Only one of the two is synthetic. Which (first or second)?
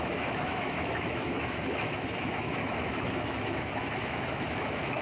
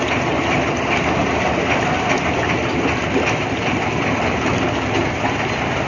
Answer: first